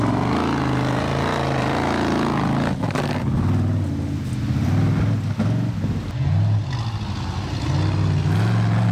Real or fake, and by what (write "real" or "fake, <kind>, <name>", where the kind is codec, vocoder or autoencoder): real